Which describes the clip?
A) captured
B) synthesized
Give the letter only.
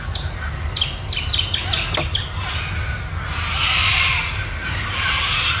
A